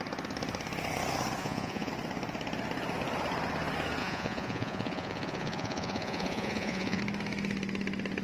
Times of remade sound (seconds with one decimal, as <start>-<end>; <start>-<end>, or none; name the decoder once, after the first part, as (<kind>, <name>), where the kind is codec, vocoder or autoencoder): 1.4-1.9 (vocoder, Vocos); 4.0-7.0